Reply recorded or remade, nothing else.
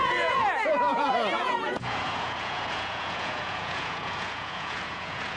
remade